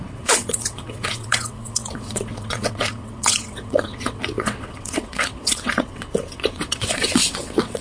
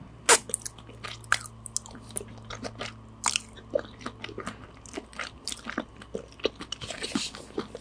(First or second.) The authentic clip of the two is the second